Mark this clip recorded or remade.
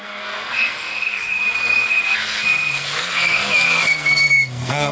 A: remade